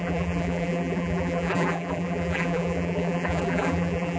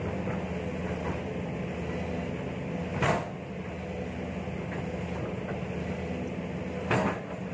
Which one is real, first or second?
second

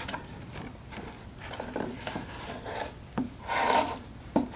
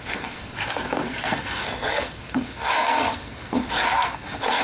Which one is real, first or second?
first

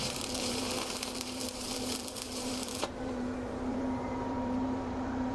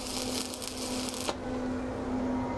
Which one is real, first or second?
second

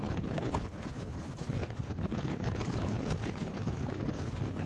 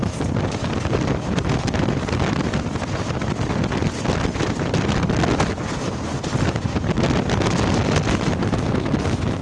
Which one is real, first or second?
second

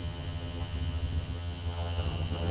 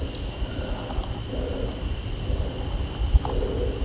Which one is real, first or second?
second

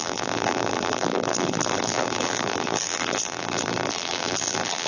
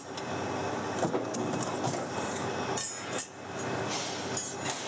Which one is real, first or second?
second